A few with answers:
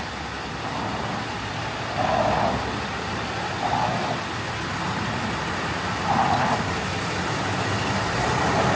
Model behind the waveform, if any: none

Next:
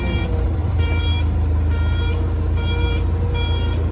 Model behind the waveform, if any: none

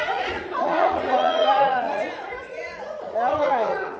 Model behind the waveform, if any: vocoder, Vocos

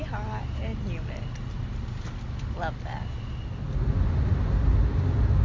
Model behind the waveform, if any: none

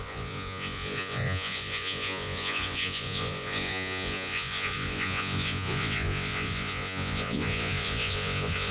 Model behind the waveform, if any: vocoder, Vocos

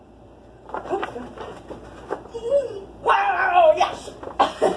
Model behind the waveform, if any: none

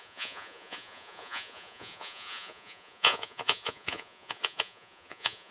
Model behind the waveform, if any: vocoder, Vocos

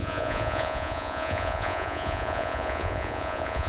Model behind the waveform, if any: vocoder, Vocos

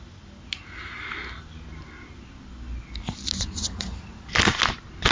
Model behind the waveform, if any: none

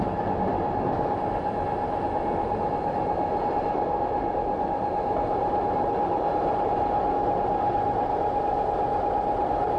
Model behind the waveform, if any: none